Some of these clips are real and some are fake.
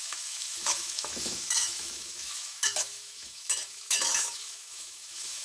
fake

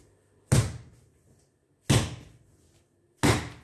real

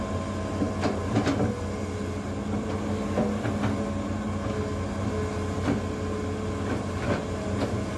real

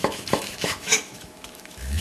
fake